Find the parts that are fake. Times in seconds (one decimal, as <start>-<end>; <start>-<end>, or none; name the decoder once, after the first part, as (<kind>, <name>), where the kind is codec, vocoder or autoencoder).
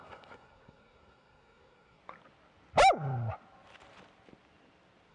0.0-2.0 (codec, SNAC)